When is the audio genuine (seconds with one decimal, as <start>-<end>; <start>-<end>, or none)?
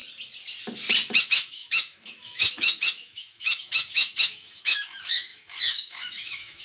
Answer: 0.0-1.2